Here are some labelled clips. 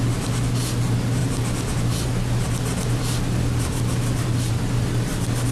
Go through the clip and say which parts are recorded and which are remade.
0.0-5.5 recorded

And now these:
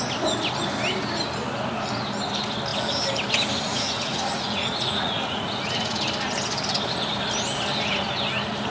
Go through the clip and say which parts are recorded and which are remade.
0.0-3.7 recorded; 3.7-6.0 remade; 6.0-8.7 recorded

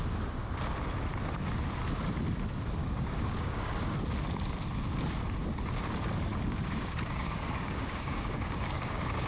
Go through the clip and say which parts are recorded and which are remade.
0.0-2.8 recorded; 2.8-3.7 remade; 3.7-6.3 recorded; 6.3-9.3 remade

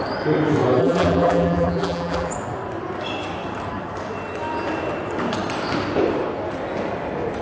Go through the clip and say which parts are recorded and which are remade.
0.0-0.8 recorded; 0.8-2.3 remade; 2.3-7.4 recorded

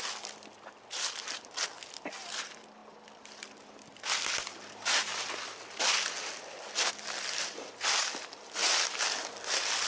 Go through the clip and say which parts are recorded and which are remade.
0.0-9.9 recorded

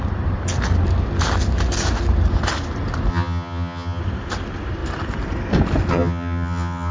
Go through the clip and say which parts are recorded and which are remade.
0.0-3.1 recorded; 3.1-4.0 remade; 4.0-5.9 recorded; 5.9-6.9 remade

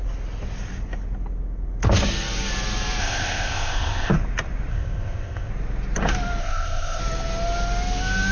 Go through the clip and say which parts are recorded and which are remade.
0.0-3.0 recorded; 3.0-4.1 remade; 4.1-4.7 recorded; 4.7-5.5 remade; 5.5-6.4 recorded; 6.4-7.0 remade; 7.0-8.3 recorded

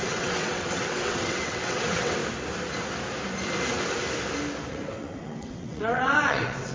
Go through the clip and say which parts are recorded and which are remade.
0.0-2.2 remade; 2.2-4.7 recorded; 4.7-6.7 remade